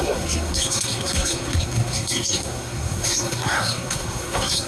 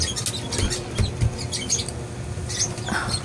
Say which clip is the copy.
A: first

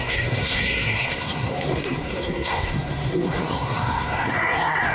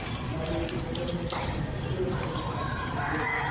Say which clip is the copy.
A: first